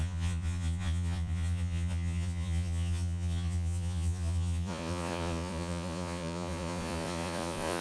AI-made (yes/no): yes